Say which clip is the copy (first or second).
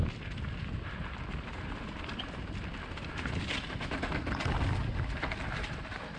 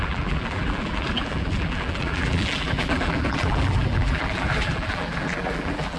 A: second